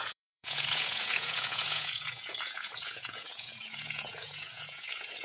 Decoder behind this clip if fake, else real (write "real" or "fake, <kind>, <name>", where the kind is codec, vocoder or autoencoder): fake, vocoder, Vocos